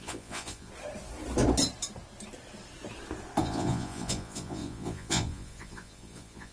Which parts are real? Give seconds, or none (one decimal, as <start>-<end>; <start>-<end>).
0.7-3.4